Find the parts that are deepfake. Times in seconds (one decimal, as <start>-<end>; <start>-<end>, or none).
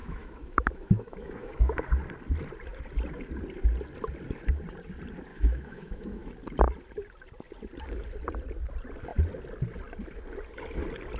0.0-1.8; 5.3-6.3